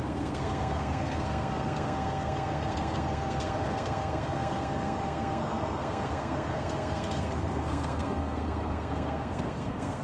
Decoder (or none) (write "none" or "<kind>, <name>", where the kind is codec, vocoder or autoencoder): codec, SNAC